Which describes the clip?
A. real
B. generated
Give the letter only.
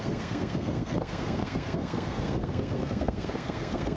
B